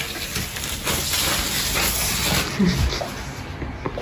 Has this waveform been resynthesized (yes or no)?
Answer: no